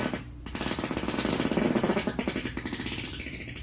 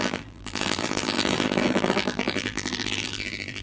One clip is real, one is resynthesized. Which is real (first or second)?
first